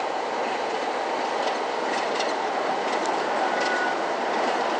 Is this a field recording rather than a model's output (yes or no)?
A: yes